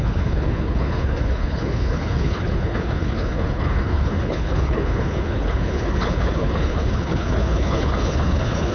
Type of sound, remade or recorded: remade